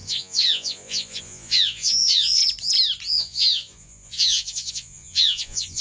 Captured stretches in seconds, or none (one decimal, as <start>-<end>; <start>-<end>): 2.4-3.1